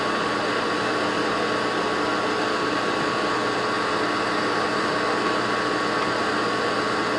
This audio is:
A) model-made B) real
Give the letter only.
B